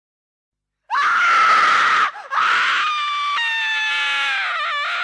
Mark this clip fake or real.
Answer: real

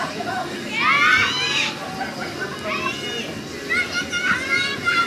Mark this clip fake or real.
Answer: real